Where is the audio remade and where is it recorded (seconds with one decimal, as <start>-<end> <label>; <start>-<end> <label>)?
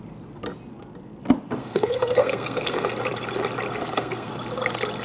0.0-1.6 recorded; 1.6-2.9 remade; 2.9-3.8 recorded; 3.8-4.3 remade; 4.3-5.0 recorded